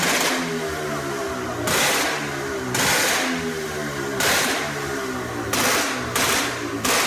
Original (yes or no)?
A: yes